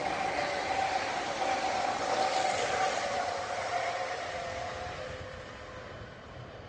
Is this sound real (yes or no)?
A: yes